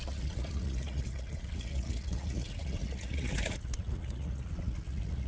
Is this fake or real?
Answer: fake